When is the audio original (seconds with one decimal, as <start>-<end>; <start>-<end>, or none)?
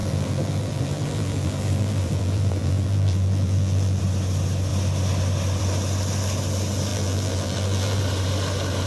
4.0-6.9; 8.0-8.9